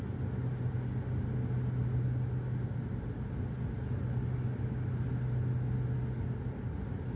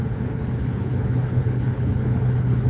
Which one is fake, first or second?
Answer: second